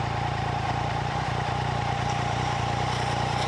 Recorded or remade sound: remade